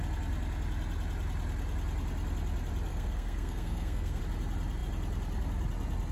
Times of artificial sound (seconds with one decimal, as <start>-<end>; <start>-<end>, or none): 2.9-4.2